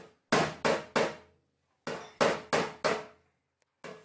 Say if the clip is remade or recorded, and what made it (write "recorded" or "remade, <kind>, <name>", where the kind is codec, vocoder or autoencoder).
recorded